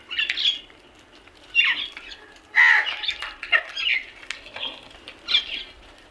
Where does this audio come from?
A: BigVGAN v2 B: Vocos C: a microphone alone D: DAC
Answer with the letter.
C